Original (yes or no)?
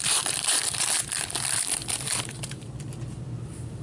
no